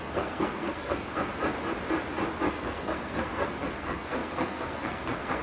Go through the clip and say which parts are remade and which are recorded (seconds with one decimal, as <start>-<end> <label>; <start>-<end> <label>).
0.0-1.3 remade; 1.3-2.5 recorded; 2.5-5.4 remade